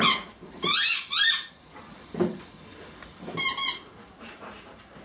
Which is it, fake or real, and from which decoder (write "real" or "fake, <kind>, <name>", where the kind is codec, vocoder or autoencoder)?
real